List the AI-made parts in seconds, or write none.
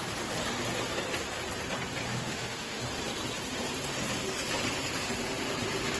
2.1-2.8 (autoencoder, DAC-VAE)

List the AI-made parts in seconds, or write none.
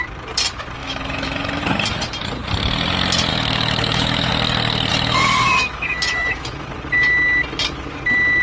0.8-1.6 (autoencoder, DAC-VAE); 3.3-4.3; 4.9-6.7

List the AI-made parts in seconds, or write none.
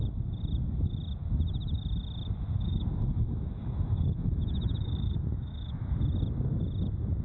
2.7-5.9 (autoencoder, DAC-VAE)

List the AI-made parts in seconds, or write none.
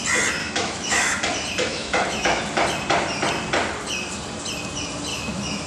0.4-1.2 (autoencoder, DAC-VAE); 1.7-2.4; 5.1-5.7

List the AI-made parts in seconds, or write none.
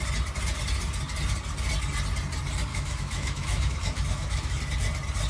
2.7-4.6 (autoencoder, DAC-VAE)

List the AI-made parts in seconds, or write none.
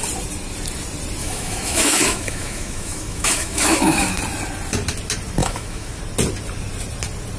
1.2-4.2 (autoencoder, DAC-VAE); 5.4-6.0